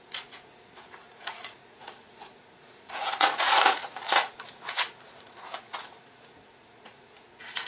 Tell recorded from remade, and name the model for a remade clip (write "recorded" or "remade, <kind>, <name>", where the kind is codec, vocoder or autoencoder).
remade, vocoder, Vocos